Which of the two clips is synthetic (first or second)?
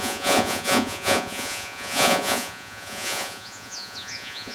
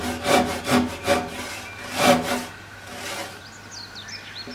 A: first